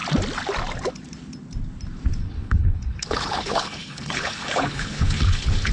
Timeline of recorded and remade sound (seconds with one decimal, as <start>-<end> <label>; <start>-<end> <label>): 0.0-2.2 recorded; 2.2-5.7 remade